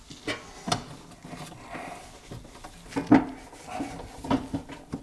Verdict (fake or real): real